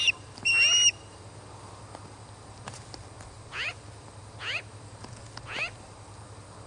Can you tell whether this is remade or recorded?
recorded